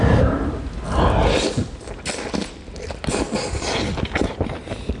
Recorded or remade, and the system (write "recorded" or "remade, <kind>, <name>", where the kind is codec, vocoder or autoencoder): recorded